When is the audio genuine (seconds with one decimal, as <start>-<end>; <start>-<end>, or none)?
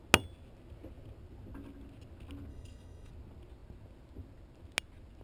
0.0-2.5; 3.1-5.2